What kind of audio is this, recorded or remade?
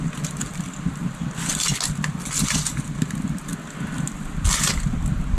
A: recorded